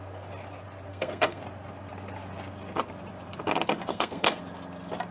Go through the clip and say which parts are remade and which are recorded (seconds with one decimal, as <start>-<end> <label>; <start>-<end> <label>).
0.0-0.9 recorded; 0.9-1.4 remade; 1.4-3.9 recorded; 3.9-4.4 remade; 4.4-5.1 recorded

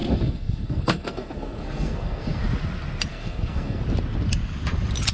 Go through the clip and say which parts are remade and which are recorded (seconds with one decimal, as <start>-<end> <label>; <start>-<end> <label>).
0.0-2.4 remade; 2.4-3.1 recorded; 3.1-3.8 remade; 3.8-5.1 recorded

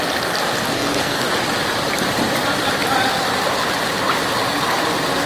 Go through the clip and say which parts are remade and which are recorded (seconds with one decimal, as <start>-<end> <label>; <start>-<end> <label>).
0.0-0.7 recorded; 0.7-1.3 remade; 1.3-5.3 recorded

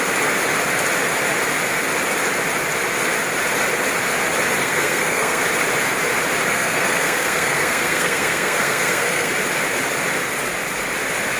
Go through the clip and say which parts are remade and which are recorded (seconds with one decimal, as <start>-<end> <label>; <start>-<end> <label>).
0.0-4.6 recorded; 4.6-5.4 remade; 5.4-6.5 recorded; 6.5-9.3 remade; 9.3-11.4 recorded

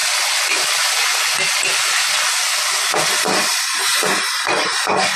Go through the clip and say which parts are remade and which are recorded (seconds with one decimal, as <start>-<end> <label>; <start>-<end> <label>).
0.0-5.2 recorded

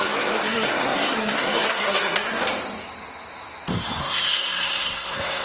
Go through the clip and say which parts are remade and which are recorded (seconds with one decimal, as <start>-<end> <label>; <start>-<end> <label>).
0.0-2.4 remade; 2.4-4.0 recorded; 4.0-5.4 remade